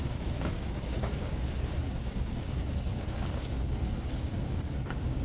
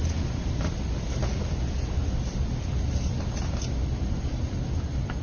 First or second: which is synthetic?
first